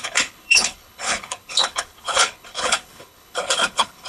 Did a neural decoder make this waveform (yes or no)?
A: yes